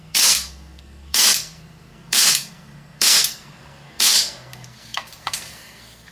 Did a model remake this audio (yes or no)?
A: yes